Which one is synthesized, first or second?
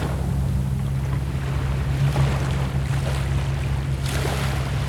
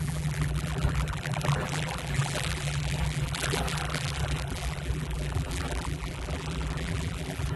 second